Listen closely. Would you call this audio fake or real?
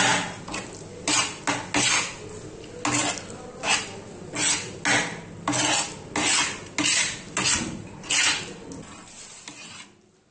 real